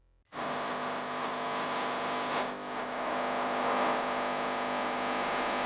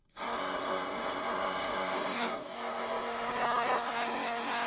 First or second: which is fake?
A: second